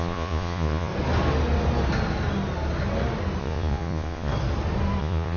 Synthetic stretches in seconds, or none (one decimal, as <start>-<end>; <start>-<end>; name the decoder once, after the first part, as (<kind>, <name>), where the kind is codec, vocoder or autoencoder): 0.0-0.9 (vocoder, Vocos); 3.4-4.3; 5.0-5.4